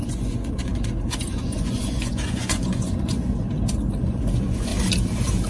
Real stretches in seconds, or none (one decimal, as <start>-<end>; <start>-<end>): 3.3-4.0; 4.7-5.5